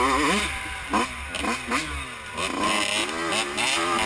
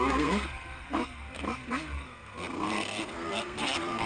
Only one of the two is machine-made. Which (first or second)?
second